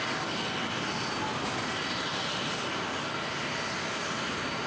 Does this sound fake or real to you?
real